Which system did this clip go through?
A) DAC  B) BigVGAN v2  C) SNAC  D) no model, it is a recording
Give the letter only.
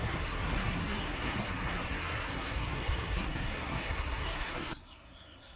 C